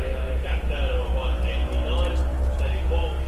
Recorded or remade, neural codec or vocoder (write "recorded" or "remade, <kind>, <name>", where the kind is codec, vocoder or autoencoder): recorded